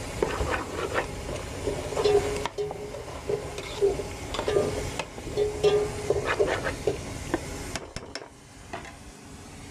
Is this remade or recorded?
recorded